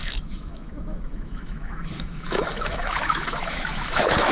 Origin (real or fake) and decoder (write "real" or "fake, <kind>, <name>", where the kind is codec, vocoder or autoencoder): fake, autoencoder, DAC-VAE